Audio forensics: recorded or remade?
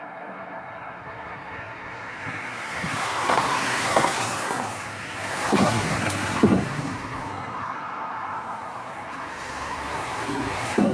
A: remade